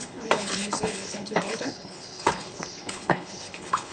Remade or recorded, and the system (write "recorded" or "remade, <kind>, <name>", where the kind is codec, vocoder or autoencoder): remade, codec, HILCodec